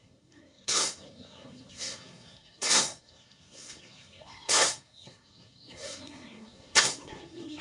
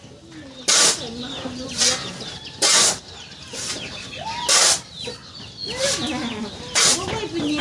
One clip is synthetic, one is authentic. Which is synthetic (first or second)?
first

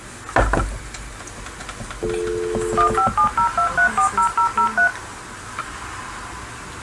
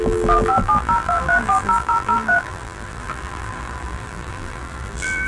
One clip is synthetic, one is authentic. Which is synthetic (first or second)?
second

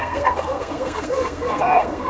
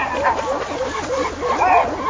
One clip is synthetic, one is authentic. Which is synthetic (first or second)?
first